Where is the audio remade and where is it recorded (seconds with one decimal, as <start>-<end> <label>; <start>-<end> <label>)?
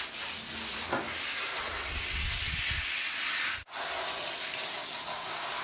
0.0-1.5 recorded; 1.5-3.4 remade; 3.4-5.6 recorded